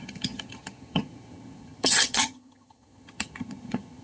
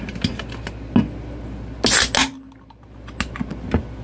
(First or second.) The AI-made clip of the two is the first